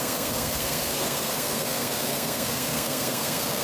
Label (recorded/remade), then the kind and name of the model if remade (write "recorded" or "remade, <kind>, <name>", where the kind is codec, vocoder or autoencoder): remade, codec, SNAC